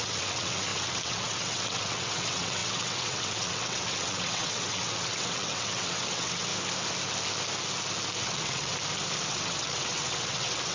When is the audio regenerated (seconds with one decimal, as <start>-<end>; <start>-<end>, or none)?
0.0-6.5; 8.2-8.7; 9.3-10.7